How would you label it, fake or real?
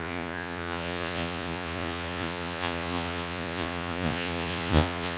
fake